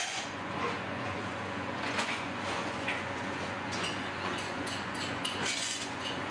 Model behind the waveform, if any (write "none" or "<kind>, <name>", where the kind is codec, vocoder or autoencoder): vocoder, Vocos